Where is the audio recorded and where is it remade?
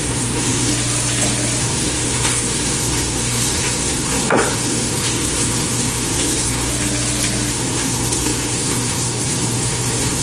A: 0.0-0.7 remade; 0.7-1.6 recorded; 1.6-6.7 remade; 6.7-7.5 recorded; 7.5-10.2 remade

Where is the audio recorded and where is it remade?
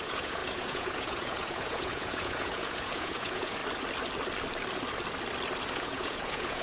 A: 0.0-3.6 remade; 3.6-5.7 recorded; 5.7-6.6 remade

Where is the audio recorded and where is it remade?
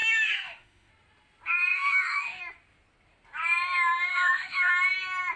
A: 0.0-0.9 remade; 0.9-1.7 recorded; 1.7-2.4 remade; 2.4-4.1 recorded; 4.1-4.7 remade; 4.7-5.4 recorded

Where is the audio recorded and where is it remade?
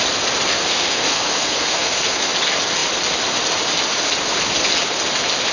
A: 0.0-0.5 recorded; 0.5-2.3 remade; 2.3-5.5 recorded